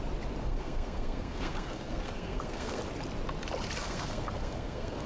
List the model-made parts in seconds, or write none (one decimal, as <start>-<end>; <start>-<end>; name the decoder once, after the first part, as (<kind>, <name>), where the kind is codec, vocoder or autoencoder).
0.4-2.8 (codec, SNAC); 3.8-5.1